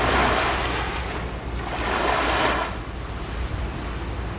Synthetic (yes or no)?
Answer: no